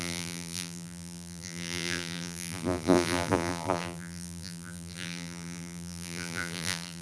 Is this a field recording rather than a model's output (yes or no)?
no